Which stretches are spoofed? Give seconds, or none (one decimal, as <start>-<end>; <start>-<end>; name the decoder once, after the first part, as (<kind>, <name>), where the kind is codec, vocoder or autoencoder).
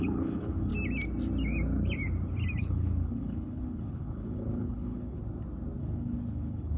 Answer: 0.0-0.7 (codec, HILCodec); 2.6-5.2; 5.8-6.8